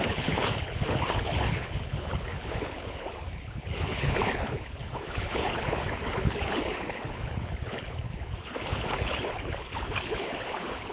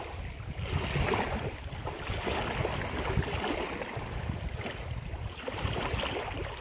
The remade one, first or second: first